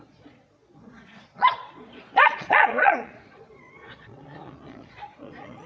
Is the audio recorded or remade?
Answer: remade